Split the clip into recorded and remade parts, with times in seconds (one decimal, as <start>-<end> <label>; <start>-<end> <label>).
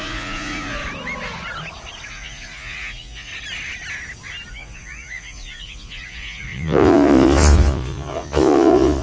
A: 0.0-0.8 remade; 0.8-2.1 recorded; 2.1-3.3 remade; 3.3-4.5 recorded; 4.5-9.0 remade